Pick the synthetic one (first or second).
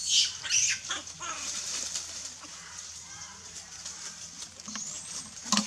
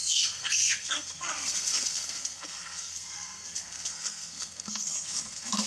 second